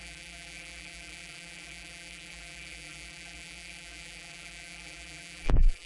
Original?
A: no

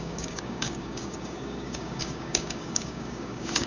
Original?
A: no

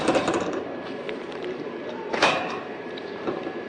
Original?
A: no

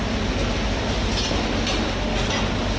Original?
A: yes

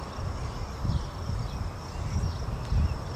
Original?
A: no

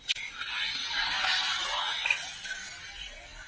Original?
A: yes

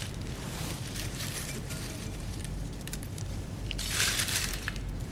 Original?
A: no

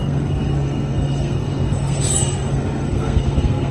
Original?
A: no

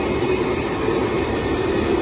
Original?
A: yes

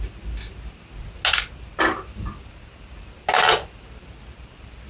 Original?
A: yes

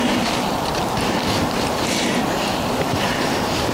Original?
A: yes